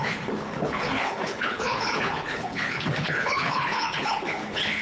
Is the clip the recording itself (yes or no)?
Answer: no